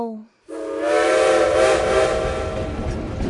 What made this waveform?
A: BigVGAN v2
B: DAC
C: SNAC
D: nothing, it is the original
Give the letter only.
D